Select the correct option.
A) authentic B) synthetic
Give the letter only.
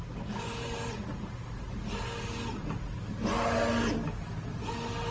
A